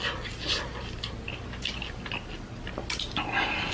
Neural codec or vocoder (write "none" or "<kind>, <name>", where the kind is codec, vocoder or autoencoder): none